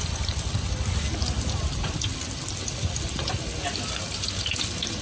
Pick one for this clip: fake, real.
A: real